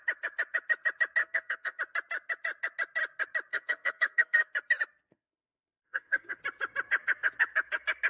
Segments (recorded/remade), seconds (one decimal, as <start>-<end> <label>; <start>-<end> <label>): 0.0-1.2 recorded; 1.2-1.8 remade; 1.8-3.5 recorded; 3.5-4.5 remade; 4.5-5.1 recorded; 5.1-6.4 remade; 6.4-8.1 recorded